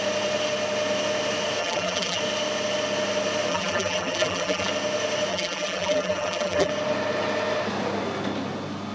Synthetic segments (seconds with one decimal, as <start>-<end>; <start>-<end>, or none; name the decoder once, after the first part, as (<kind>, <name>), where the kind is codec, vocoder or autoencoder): 1.6-2.2 (vocoder, BigVGAN v2); 3.5-4.7; 5.3-6.7

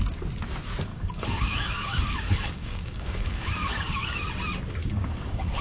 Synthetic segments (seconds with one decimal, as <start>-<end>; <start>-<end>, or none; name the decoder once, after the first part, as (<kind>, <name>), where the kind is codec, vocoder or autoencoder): 0.9-4.3 (codec, DAC); 4.8-5.6

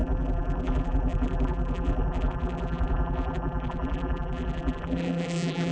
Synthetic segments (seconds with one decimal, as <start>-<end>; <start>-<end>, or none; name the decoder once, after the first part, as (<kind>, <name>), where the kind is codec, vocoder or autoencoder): 0.0-5.7 (vocoder, BigVGAN v2)

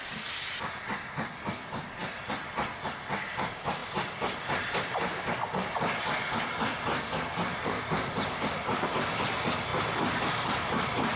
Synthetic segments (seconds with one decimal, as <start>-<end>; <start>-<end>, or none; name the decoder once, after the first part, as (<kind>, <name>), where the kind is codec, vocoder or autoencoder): none

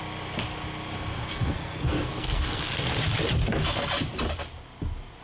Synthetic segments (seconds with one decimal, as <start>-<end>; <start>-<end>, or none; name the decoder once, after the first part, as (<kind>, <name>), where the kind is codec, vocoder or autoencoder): 1.1-2.8 (codec, SNAC)